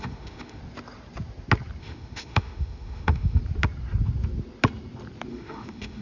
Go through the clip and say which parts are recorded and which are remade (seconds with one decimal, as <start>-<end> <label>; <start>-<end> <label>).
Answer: 0.0-0.6 remade; 0.6-1.8 recorded; 1.8-3.4 remade; 3.4-5.3 recorded; 5.3-6.0 remade